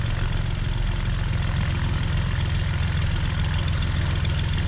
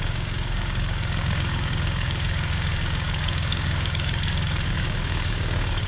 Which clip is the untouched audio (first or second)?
first